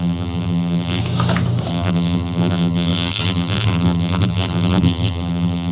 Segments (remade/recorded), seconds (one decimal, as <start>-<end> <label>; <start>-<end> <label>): 0.0-1.0 remade; 1.0-1.7 recorded; 1.7-5.7 remade